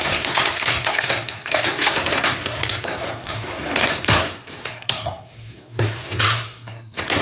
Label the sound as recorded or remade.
remade